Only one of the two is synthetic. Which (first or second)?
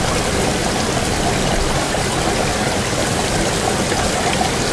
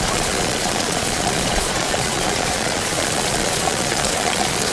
second